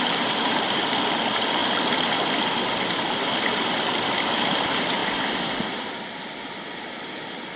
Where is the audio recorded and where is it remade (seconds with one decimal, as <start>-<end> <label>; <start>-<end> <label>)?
0.0-1.6 recorded; 1.6-4.4 remade; 4.4-5.0 recorded; 5.0-6.0 remade; 6.0-7.6 recorded